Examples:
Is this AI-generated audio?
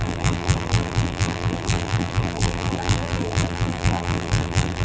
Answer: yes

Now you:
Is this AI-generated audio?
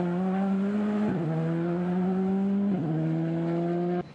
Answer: no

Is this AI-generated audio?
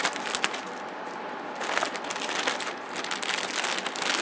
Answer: no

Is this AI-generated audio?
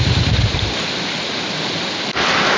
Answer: yes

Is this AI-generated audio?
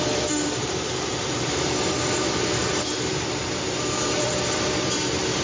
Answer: yes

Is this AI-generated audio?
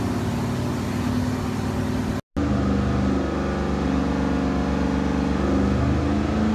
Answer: no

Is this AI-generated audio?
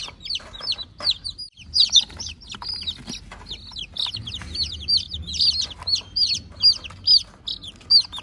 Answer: no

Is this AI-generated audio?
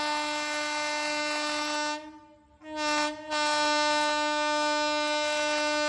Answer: no